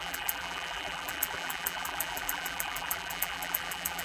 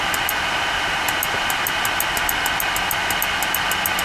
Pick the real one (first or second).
second